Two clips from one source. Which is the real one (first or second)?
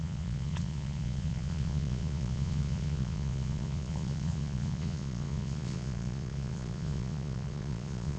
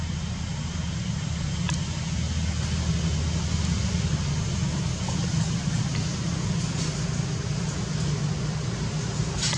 second